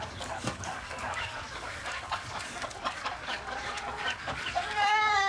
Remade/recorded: remade